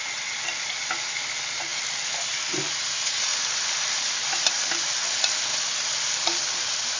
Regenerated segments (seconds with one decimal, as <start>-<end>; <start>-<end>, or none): 0.0-7.0